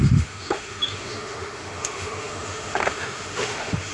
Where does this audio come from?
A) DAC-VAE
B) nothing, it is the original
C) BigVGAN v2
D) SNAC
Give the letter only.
A